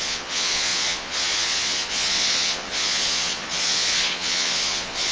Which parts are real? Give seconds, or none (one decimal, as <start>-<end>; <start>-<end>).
none